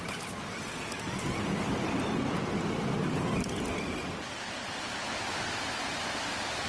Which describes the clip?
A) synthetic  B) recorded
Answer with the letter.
B